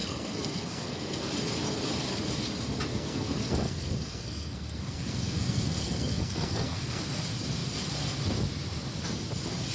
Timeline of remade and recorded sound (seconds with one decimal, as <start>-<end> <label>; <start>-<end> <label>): 0.0-1.3 remade; 1.3-2.9 recorded; 2.9-7.0 remade; 7.0-9.7 recorded

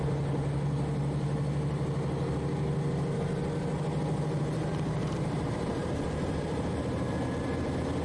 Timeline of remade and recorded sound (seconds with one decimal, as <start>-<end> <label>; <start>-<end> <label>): 0.0-5.0 recorded; 5.0-6.7 remade; 6.7-8.0 recorded

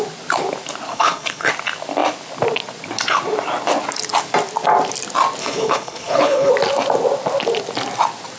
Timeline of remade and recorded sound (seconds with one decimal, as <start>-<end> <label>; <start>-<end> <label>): 0.0-0.9 recorded; 0.9-1.5 remade; 1.5-5.4 recorded; 5.4-6.5 remade; 6.5-8.4 recorded

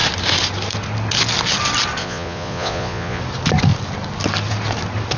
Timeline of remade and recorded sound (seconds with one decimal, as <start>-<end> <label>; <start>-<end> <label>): 0.0-2.0 recorded; 2.0-3.2 remade; 3.2-5.2 recorded

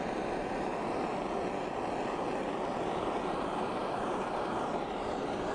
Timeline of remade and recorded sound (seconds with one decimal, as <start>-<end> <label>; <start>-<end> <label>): 0.0-0.7 remade; 0.7-3.7 recorded; 3.7-5.5 remade